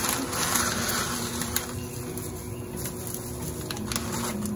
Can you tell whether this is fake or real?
real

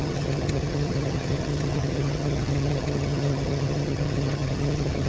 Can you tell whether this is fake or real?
fake